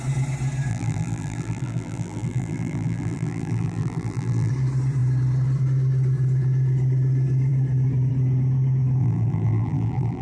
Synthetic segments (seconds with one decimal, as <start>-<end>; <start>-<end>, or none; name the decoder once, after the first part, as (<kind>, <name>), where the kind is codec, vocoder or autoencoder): 0.7-4.5 (vocoder, BigVGAN v2); 9.0-10.2